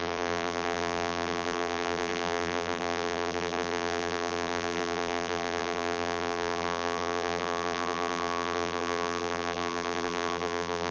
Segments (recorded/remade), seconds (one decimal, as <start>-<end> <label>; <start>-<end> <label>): 0.0-10.9 remade